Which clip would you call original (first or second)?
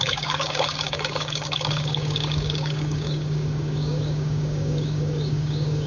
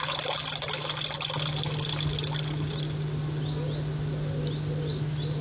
second